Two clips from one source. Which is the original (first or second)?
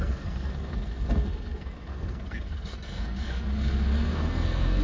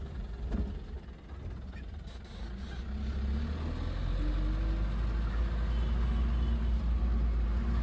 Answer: second